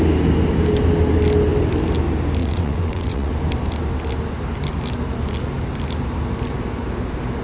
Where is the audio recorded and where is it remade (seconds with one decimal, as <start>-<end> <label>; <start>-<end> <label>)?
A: 0.0-2.4 recorded; 2.4-3.3 remade; 3.3-7.4 recorded